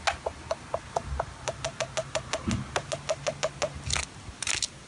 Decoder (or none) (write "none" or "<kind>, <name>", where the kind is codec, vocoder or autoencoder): none